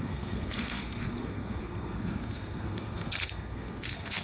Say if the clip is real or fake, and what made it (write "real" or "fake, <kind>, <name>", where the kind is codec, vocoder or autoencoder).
fake, codec, SNAC